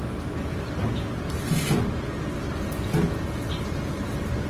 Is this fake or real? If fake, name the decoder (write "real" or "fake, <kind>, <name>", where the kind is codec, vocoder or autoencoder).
real